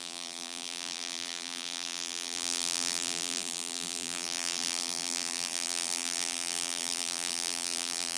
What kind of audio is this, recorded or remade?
remade